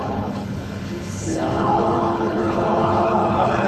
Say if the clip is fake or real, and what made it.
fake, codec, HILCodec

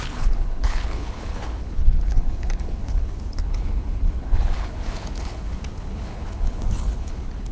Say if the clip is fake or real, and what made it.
fake, codec, HILCodec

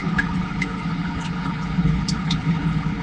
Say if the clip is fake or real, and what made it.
fake, codec, HILCodec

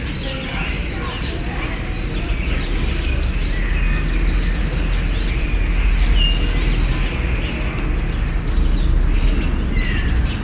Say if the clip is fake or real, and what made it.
real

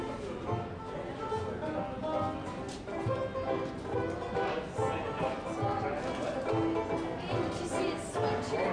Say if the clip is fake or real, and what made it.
real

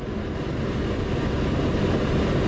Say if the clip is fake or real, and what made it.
real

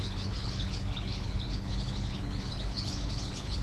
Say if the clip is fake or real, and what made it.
fake, codec, HILCodec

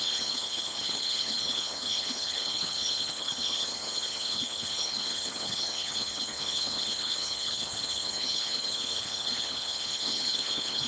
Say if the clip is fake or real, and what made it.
fake, codec, HILCodec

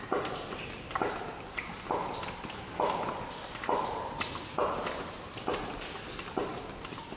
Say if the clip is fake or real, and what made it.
real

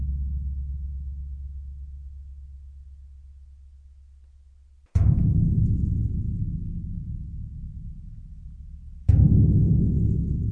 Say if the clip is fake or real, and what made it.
real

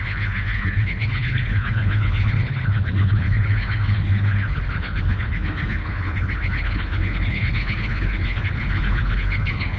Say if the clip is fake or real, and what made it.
fake, codec, HILCodec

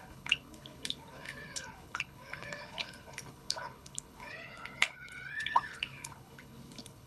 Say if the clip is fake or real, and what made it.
fake, codec, HILCodec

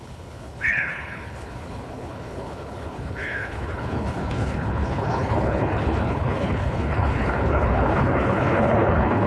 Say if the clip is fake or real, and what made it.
fake, codec, HILCodec